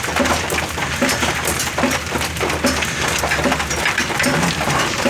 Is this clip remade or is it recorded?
recorded